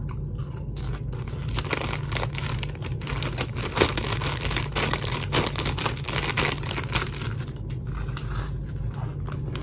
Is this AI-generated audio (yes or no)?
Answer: no